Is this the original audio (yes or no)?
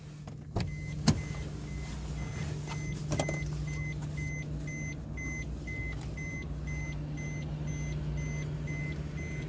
yes